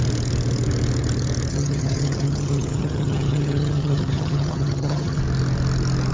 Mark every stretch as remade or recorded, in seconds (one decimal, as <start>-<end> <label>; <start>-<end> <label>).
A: 0.0-1.5 recorded; 1.5-5.2 remade; 5.2-6.1 recorded